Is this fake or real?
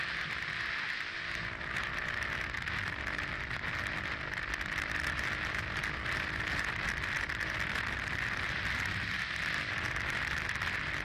real